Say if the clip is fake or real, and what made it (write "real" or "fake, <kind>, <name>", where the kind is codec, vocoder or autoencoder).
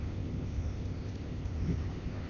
fake, codec, ZipCodec